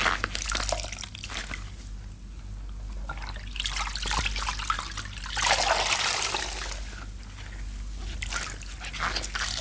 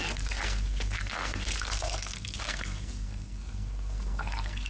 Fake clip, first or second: second